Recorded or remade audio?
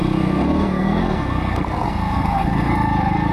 remade